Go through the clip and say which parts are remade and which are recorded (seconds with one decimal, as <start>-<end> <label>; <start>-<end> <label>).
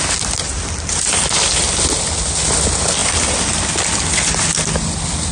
0.0-5.3 recorded